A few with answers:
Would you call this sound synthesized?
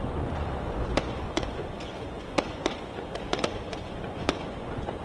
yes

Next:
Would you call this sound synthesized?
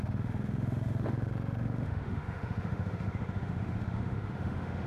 yes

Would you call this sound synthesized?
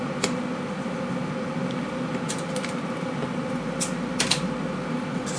no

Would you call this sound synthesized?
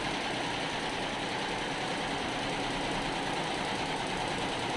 yes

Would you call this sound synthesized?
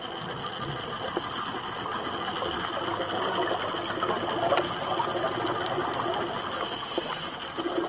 no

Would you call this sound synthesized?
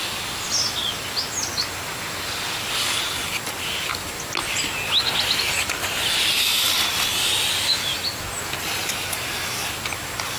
no